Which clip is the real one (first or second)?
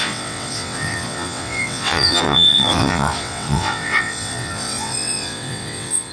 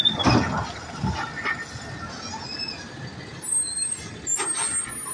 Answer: second